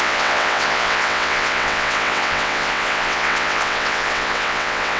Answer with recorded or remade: remade